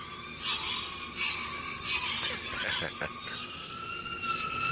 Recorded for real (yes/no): yes